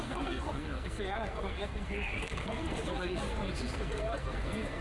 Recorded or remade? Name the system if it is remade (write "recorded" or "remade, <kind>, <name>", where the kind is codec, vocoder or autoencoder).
remade, codec, SNAC